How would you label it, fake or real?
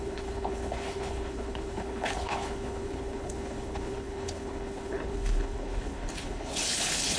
fake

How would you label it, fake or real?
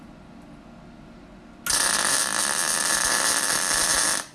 real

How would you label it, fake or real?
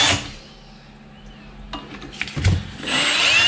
real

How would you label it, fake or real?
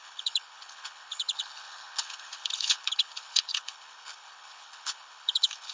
fake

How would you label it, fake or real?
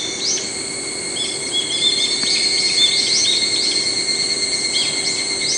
real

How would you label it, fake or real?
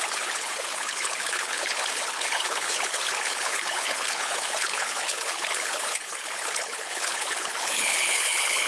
fake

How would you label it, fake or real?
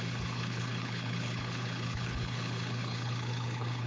fake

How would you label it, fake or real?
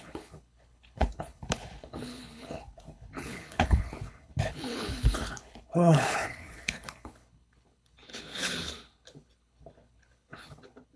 fake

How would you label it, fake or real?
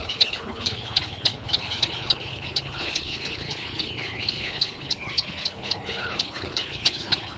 fake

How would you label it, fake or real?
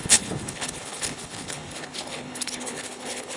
fake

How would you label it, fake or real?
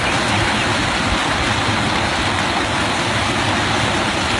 real